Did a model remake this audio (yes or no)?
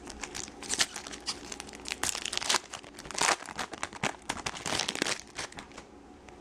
no